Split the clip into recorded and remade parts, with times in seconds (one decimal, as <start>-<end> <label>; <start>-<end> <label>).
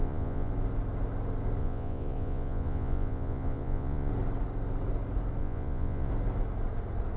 0.0-0.5 remade; 0.5-1.6 recorded; 1.6-4.1 remade; 4.1-5.4 recorded; 5.4-6.1 remade; 6.1-7.2 recorded